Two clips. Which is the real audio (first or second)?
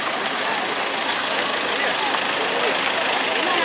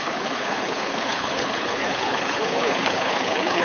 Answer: first